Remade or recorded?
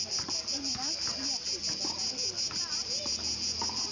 recorded